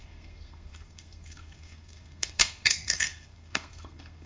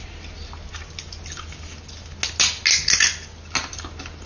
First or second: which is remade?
first